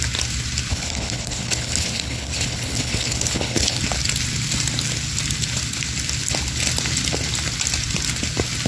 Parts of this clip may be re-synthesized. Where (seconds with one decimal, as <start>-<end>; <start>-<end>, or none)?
0.7-3.8